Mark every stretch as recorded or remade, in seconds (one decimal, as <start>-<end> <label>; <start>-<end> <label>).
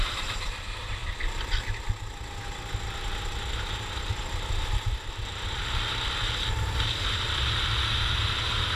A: 0.0-1.0 remade; 1.0-5.1 recorded; 5.1-8.8 remade